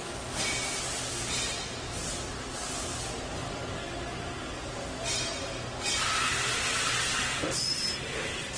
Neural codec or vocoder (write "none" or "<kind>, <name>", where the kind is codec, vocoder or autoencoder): none